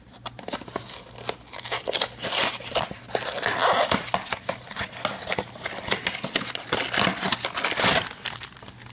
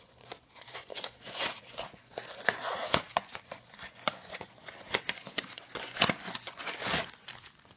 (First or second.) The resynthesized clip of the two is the second